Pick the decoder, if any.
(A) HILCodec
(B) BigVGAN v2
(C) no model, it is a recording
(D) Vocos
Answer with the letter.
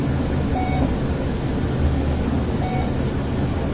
C